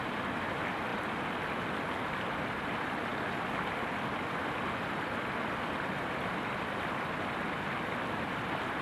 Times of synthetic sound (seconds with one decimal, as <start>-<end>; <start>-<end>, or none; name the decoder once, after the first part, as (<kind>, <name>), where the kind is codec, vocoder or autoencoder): none